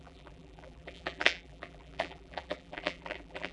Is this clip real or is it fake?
fake